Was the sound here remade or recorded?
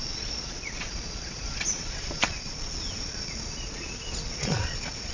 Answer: remade